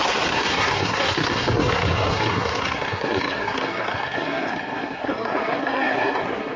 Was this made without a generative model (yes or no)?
no